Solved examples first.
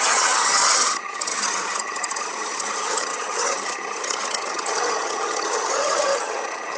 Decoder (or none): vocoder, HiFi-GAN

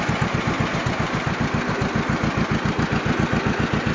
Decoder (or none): none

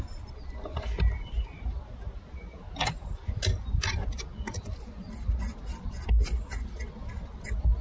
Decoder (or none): none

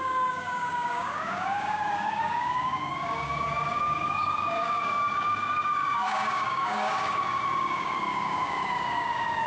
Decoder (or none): codec, DAC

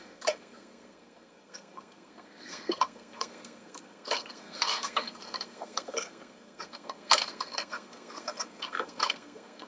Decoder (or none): codec, SNAC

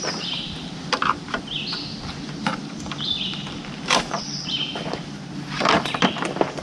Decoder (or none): vocoder, BigVGAN v2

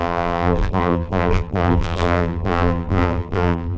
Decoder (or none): vocoder, BigVGAN v2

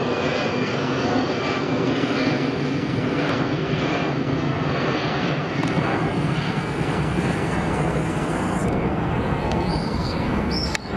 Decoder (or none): codec, SNAC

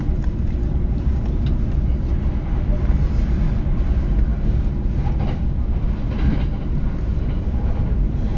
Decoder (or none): none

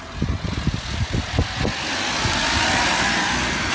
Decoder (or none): none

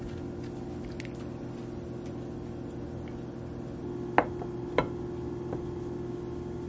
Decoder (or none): none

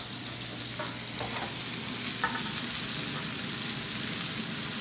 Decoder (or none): none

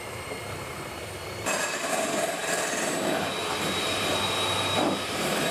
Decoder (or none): vocoder, BigVGAN v2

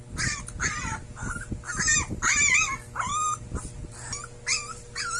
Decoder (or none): none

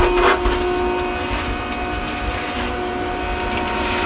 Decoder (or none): none